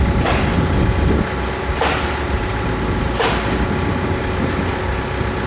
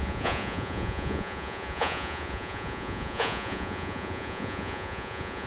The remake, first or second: second